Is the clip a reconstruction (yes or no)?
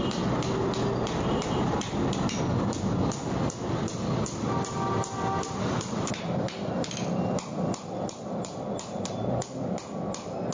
no